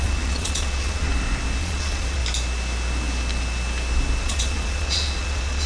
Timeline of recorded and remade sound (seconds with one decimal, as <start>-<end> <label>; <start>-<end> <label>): 0.0-1.1 remade; 1.1-1.6 recorded; 1.6-2.2 remade; 2.2-4.2 recorded; 4.2-5.7 remade